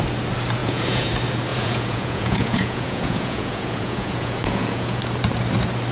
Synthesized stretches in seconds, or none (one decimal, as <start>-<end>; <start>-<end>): 0.6-1.1; 1.5-5.0

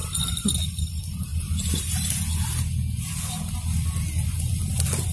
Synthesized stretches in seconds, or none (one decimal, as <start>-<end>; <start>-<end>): 0.0-0.6

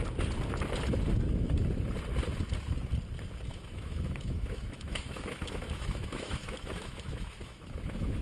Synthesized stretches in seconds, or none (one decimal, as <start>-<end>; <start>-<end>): 3.5-8.2